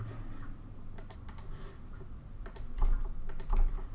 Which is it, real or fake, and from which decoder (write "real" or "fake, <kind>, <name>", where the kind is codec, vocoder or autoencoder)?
real